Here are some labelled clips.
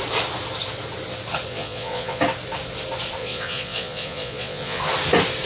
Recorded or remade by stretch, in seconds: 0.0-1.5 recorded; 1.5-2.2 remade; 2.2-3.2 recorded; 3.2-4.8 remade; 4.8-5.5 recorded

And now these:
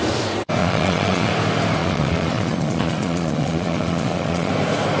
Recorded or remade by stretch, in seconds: 0.0-0.6 recorded; 0.6-1.3 remade; 1.3-1.8 recorded; 1.8-4.5 remade; 4.5-5.0 recorded

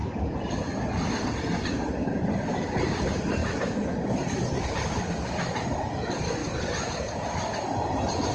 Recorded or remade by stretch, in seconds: 0.0-8.3 recorded

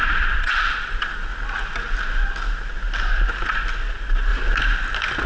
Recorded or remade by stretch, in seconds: 0.0-1.3 remade; 1.3-3.7 recorded; 3.7-4.3 remade; 4.3-5.3 recorded

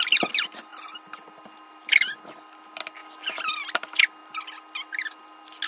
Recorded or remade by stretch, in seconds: 0.0-5.7 recorded

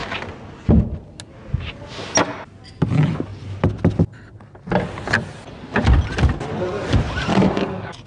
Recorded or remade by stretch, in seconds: 0.0-7.3 recorded; 7.3-8.1 remade

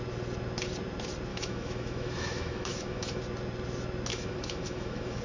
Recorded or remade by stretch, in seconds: 0.0-1.3 recorded; 1.3-3.2 remade; 3.2-4.1 recorded; 4.1-5.2 remade

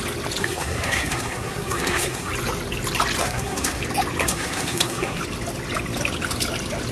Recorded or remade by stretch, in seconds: 0.0-0.4 recorded; 0.4-2.3 remade; 2.3-3.2 recorded; 3.2-3.8 remade; 3.8-4.2 recorded; 4.2-5.2 remade; 5.2-6.9 recorded